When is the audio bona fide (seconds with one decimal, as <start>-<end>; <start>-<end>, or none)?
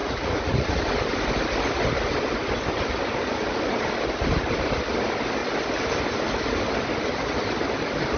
0.8-8.2